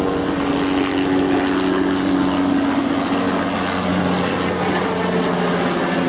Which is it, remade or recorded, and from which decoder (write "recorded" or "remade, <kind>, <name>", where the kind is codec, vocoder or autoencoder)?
recorded